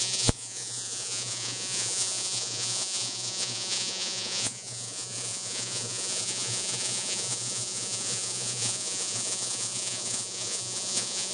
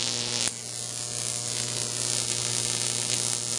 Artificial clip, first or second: first